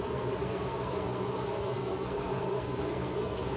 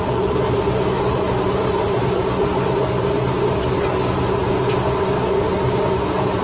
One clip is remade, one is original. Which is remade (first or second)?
first